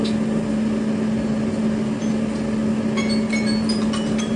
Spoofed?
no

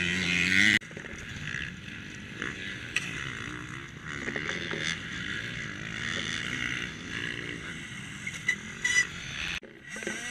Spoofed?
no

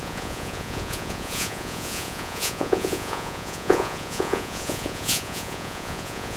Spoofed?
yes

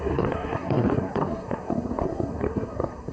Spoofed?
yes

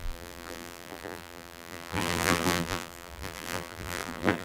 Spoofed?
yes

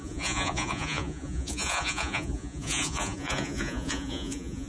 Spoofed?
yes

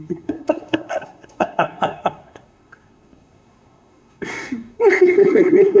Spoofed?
yes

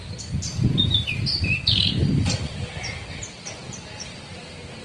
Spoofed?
yes